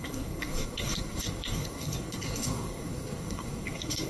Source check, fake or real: fake